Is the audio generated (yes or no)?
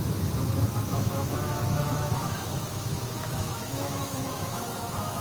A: yes